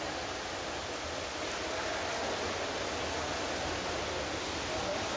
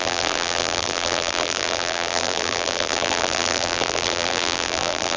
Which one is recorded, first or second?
first